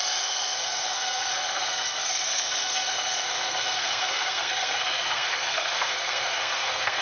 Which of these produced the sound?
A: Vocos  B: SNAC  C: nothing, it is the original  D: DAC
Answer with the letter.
B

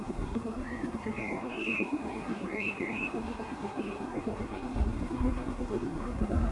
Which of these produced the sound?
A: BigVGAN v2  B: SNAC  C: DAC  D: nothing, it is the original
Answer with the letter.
B